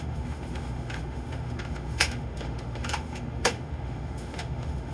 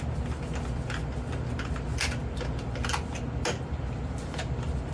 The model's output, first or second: first